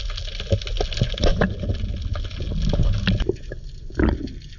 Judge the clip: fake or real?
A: real